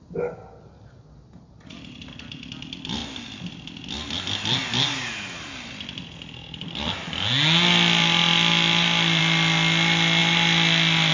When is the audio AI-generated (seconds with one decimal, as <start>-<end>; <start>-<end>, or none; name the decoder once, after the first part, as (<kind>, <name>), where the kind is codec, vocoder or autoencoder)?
none